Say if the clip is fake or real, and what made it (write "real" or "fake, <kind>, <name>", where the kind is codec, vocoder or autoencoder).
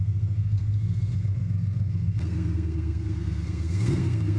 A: fake, codec, SNAC